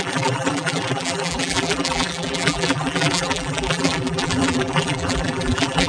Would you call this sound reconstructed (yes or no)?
yes